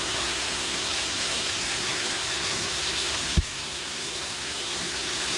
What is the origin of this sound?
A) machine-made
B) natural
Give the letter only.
A